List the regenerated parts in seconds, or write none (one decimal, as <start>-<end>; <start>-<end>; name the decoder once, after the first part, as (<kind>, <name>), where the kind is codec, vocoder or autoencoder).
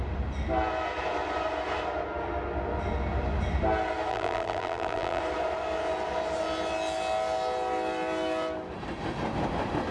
4.1-5.2 (vocoder, BigVGAN v2)